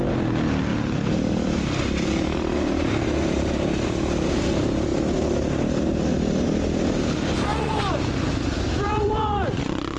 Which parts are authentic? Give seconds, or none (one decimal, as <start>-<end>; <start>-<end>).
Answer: 0.0-7.5; 8.0-8.9